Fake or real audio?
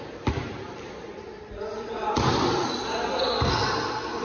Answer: real